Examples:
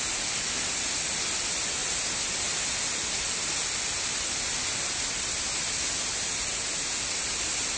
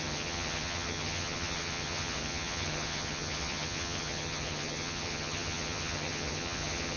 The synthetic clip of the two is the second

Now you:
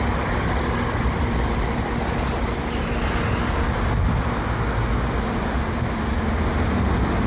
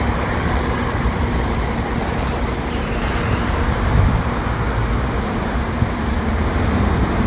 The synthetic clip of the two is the second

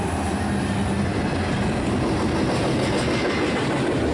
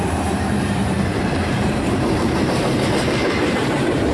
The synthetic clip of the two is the second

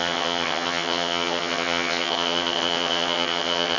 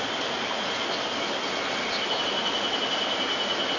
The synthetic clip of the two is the first